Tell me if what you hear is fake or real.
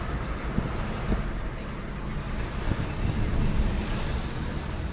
real